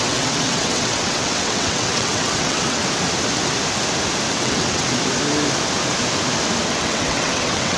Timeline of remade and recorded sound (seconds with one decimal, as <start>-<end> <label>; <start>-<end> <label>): 0.0-2.8 remade; 2.8-4.3 recorded; 4.3-4.9 remade; 4.9-6.8 recorded; 6.8-7.8 remade